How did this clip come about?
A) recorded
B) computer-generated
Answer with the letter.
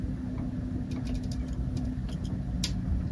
A